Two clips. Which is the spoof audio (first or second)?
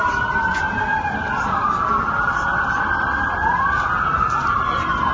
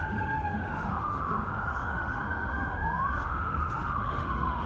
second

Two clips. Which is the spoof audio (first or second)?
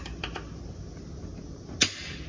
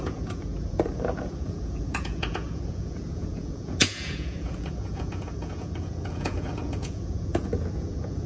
second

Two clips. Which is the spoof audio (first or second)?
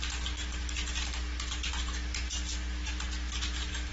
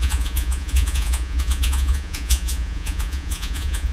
second